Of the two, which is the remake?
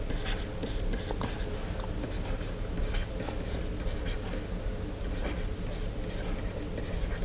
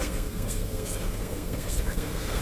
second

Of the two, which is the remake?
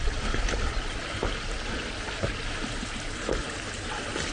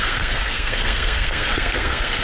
second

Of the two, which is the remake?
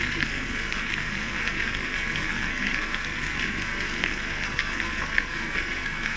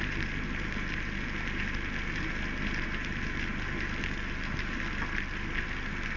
first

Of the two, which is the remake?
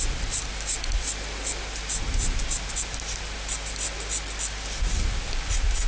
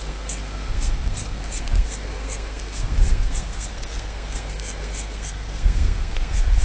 second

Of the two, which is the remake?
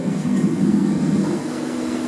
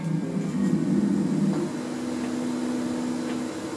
first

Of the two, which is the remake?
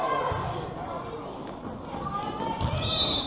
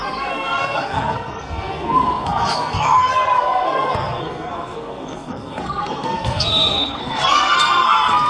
second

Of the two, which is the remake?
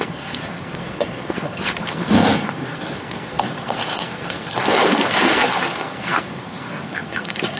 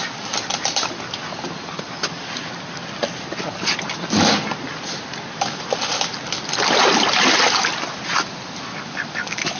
first